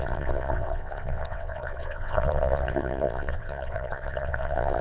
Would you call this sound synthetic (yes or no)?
yes